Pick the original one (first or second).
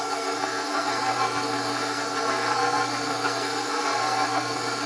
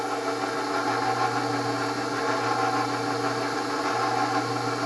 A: second